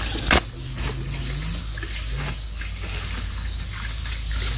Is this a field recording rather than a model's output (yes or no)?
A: yes